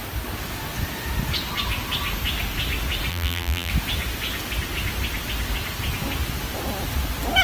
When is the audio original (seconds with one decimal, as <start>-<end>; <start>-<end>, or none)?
0.0-3.1; 3.7-7.4